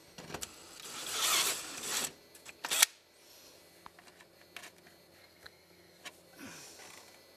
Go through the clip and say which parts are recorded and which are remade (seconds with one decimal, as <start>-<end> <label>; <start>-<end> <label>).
0.0-5.2 recorded; 5.2-6.0 remade; 6.0-7.4 recorded